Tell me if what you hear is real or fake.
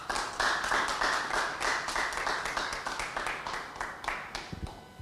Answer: real